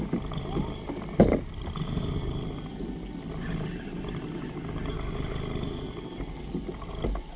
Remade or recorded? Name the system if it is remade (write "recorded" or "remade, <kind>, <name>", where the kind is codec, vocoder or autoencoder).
recorded